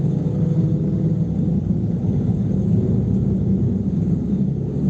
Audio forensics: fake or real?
fake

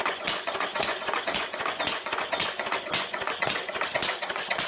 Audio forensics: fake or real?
fake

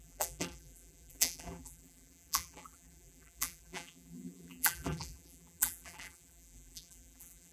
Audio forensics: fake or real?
fake